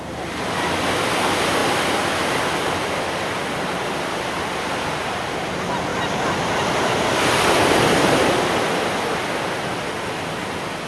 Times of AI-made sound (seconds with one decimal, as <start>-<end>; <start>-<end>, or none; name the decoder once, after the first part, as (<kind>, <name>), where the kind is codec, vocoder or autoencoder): none